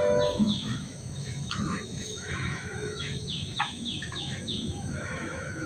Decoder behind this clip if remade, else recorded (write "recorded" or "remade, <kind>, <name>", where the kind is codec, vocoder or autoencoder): remade, autoencoder, DAC-VAE